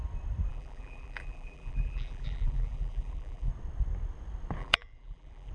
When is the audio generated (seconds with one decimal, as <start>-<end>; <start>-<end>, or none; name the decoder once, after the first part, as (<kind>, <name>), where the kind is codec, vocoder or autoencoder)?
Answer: 0.5-3.5 (vocoder, BigVGAN v2); 4.6-5.5